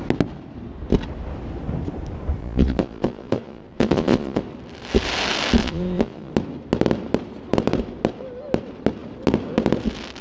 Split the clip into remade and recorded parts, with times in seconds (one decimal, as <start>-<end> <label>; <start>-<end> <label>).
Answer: 0.0-2.4 recorded; 2.4-4.4 remade; 4.4-5.6 recorded; 5.6-6.3 remade; 6.3-10.2 recorded